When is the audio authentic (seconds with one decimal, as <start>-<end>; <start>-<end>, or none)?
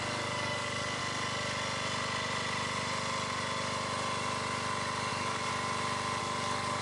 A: 1.0-5.1; 5.5-6.2